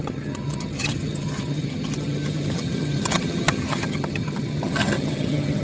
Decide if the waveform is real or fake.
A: fake